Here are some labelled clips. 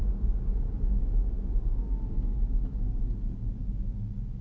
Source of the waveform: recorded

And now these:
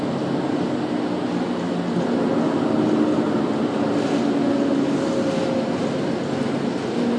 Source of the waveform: recorded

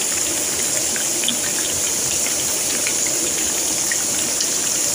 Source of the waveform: recorded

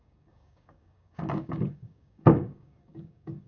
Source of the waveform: remade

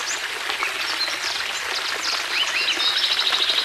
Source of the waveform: recorded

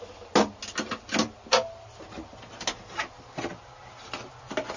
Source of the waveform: recorded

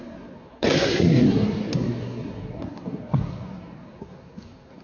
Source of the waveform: remade